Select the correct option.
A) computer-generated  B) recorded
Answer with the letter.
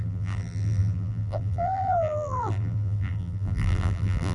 A